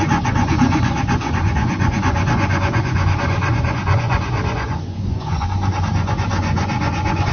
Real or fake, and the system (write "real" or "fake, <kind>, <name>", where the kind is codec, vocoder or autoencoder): fake, vocoder, Vocos